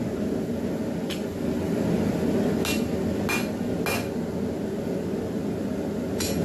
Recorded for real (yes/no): yes